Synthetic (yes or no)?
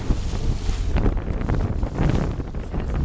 no